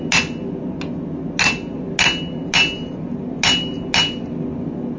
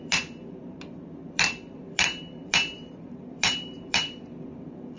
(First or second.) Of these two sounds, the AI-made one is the second